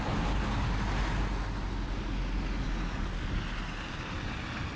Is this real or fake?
real